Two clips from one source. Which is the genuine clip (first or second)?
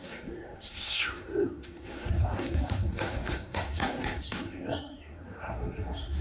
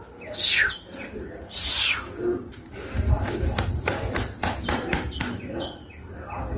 second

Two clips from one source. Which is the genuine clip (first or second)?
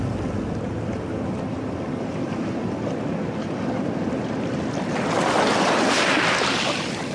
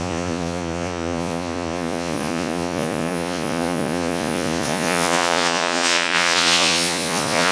first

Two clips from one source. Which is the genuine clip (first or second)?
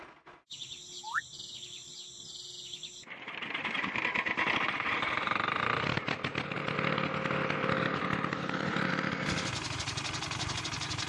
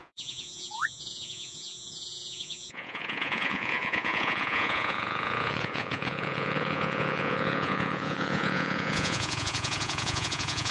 first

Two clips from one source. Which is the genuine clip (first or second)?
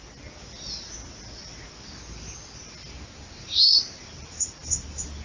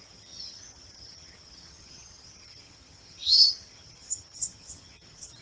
first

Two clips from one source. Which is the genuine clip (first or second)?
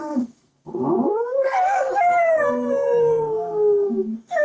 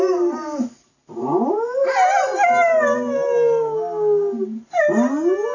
second